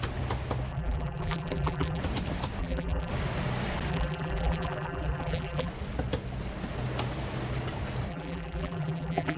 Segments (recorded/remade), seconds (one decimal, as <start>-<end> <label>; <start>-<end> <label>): 0.0-0.7 recorded; 0.7-2.0 remade; 2.0-2.6 recorded; 2.6-3.1 remade; 3.1-3.9 recorded; 3.9-5.7 remade; 5.7-8.1 recorded; 8.1-9.4 remade